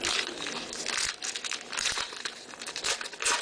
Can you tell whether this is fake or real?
fake